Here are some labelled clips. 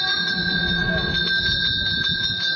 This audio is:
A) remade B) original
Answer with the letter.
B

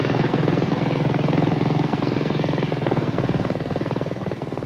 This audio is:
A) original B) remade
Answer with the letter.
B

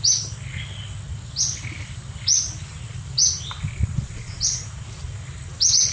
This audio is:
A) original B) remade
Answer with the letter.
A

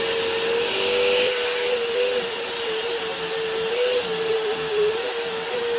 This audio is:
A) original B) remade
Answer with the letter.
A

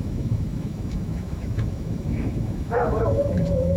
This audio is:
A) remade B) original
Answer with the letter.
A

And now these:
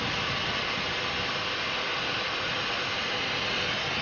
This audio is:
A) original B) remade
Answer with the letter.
A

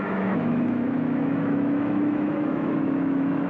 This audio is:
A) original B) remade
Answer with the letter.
B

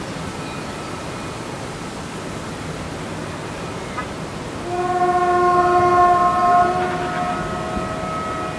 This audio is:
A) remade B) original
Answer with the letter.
B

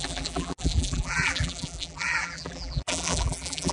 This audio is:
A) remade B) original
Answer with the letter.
A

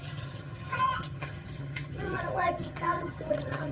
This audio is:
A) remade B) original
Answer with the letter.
A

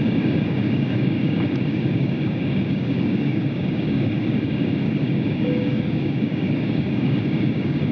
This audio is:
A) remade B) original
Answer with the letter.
A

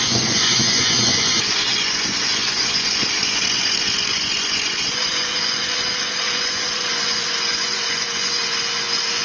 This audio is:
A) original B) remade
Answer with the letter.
B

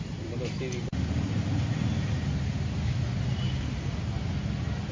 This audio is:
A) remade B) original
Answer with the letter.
B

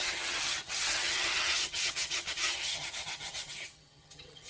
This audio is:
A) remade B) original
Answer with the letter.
A